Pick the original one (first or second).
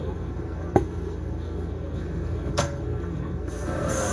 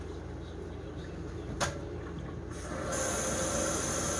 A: second